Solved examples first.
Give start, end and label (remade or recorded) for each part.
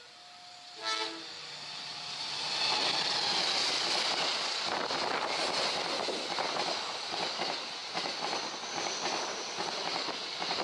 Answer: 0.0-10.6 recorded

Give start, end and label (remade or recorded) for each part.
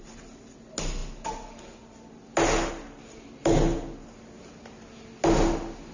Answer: 0.0-5.9 recorded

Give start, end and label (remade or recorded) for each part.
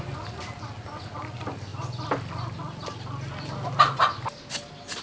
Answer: 0.0-5.0 recorded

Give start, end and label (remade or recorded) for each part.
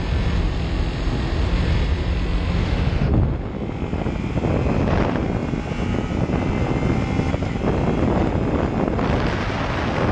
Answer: 0.0-2.6 recorded; 2.6-3.1 remade; 3.1-10.1 recorded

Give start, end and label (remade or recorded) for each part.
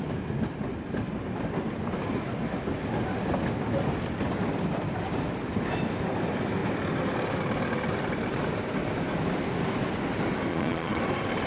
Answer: 0.0-10.5 recorded; 10.5-11.0 remade; 11.0-11.5 recorded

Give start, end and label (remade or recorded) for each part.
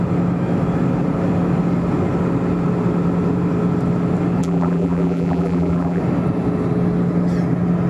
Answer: 0.0-4.4 recorded; 4.4-6.0 remade; 6.0-7.9 recorded